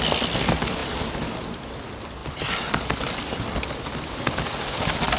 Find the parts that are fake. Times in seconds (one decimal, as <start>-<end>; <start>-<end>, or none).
0.8-1.4; 2.2-4.3